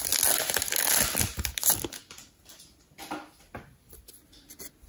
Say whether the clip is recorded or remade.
recorded